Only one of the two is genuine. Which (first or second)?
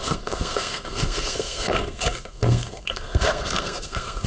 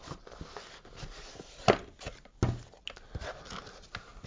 second